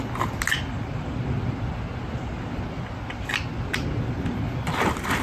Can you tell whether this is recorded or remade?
recorded